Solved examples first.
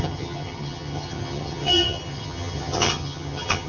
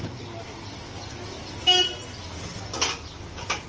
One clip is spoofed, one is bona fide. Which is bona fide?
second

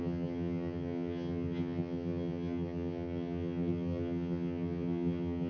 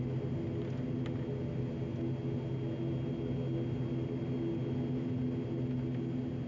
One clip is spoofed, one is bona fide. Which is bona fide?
second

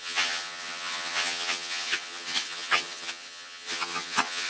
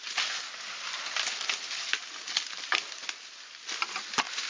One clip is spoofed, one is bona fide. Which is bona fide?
second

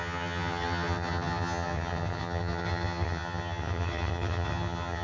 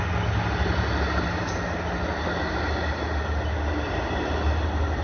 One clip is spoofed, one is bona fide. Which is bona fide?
second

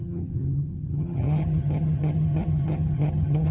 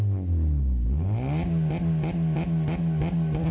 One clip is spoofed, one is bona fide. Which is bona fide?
second